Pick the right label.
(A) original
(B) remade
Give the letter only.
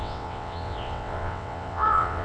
B